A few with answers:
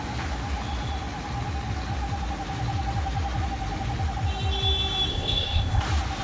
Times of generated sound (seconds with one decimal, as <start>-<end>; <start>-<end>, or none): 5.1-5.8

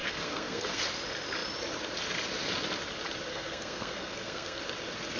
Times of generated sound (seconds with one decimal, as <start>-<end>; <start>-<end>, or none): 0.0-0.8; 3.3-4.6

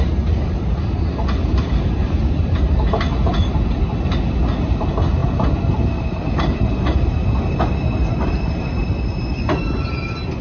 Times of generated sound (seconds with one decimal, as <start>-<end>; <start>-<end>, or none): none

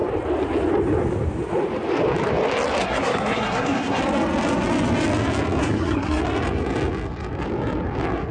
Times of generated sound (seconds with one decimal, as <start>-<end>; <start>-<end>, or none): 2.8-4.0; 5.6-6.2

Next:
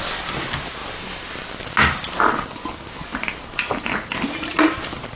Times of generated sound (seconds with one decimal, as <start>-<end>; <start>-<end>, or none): none

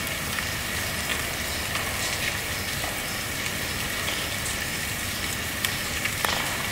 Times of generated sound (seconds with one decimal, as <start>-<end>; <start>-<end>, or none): none

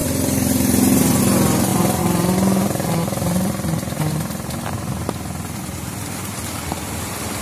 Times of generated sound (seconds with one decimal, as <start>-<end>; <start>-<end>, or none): none